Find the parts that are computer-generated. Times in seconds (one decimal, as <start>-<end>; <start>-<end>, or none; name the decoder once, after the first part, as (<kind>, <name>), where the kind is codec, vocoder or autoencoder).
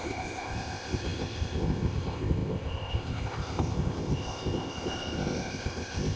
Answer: 0.0-6.2 (codec, ZipCodec)